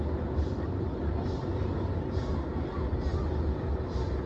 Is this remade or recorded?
recorded